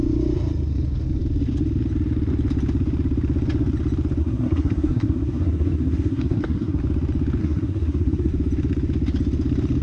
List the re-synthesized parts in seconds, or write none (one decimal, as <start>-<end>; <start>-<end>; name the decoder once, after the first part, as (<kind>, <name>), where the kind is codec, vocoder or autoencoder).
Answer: 4.2-6.8 (codec, SNAC); 7.4-8.3